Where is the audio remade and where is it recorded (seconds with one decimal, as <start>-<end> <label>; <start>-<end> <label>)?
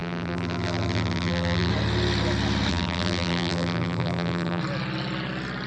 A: 0.0-1.7 remade; 1.7-2.7 recorded; 2.7-4.6 remade; 4.6-5.7 recorded